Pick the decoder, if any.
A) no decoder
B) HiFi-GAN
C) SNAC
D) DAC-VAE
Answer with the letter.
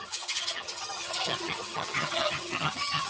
B